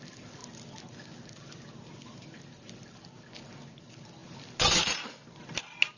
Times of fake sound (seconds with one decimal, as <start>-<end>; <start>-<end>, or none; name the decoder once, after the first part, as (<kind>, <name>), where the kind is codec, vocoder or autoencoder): none